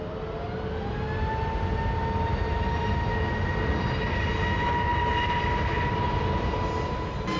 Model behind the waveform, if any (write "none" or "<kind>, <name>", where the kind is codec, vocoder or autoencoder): none